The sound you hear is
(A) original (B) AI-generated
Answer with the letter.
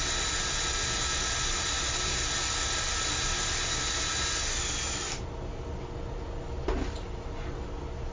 A